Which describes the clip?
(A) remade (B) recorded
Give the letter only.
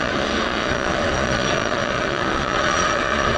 A